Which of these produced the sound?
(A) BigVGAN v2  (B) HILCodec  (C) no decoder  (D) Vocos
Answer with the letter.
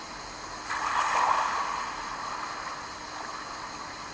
C